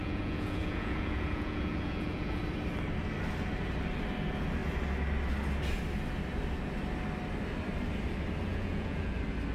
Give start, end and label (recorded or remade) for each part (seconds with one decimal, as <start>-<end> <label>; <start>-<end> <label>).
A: 0.0-2.4 remade; 2.4-8.5 recorded; 8.5-9.1 remade; 9.1-9.5 recorded